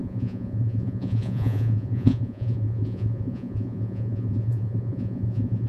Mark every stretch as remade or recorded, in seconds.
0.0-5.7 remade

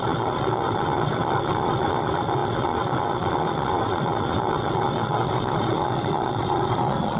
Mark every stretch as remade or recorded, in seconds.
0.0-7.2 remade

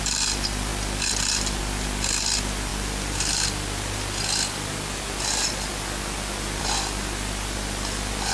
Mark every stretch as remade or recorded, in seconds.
0.0-8.3 recorded

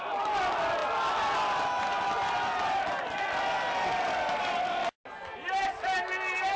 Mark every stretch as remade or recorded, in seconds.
0.0-6.6 recorded

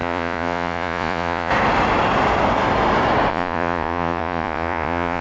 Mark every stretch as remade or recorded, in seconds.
0.0-1.5 remade; 1.5-3.3 recorded; 3.3-5.2 remade

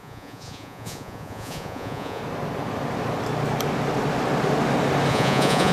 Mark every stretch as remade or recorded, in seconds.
0.0-2.2 remade; 2.2-5.1 recorded; 5.1-5.7 remade